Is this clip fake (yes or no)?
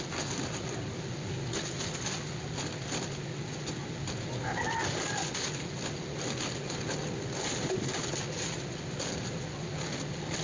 no